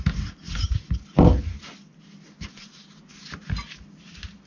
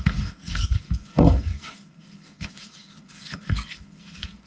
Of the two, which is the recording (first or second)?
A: first